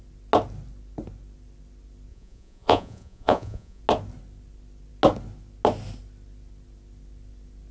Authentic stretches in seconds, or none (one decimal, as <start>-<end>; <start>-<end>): 0.0-2.1; 3.8-7.7